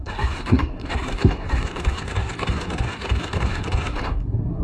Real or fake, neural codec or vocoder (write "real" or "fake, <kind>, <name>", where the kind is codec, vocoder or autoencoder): fake, codec, SNAC